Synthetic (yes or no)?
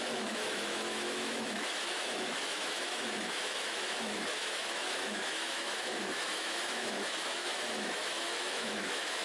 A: yes